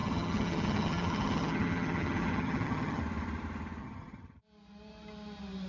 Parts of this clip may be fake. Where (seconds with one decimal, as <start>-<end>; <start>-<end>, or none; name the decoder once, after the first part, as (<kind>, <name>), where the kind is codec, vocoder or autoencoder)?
0.0-3.0 (vocoder, HiFi-GAN); 3.8-4.4